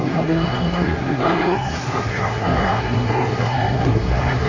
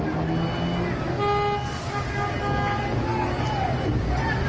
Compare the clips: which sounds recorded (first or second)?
second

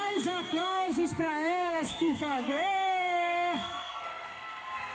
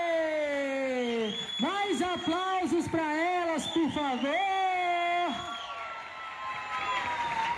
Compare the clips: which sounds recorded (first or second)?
second